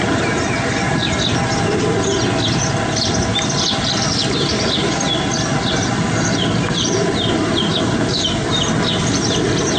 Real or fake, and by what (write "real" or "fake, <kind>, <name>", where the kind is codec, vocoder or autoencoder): real